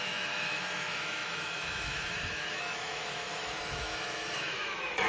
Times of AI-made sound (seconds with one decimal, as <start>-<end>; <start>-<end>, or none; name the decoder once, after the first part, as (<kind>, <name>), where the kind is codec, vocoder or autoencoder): 0.0-5.1 (autoencoder, DAC-VAE)